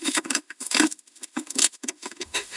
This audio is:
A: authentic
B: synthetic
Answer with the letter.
B